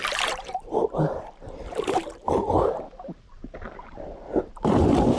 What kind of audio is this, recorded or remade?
remade